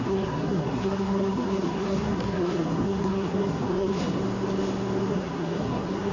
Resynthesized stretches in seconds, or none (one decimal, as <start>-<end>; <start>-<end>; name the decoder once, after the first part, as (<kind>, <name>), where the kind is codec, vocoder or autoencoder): 0.0-4.2 (codec, SNAC); 5.1-6.1